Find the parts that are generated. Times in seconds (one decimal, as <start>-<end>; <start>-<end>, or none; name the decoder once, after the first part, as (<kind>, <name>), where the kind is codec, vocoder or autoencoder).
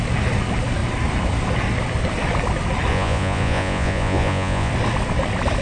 2.9-4.7 (vocoder, Vocos)